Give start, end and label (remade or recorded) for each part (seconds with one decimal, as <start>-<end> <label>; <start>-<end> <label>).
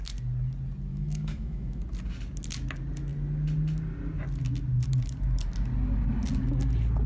0.0-0.9 recorded; 0.9-1.8 remade; 1.8-7.1 recorded